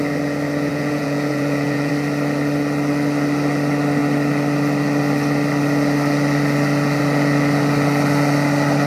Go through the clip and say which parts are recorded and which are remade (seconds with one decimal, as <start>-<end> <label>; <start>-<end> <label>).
0.0-0.7 recorded; 0.7-1.9 remade; 1.9-8.9 recorded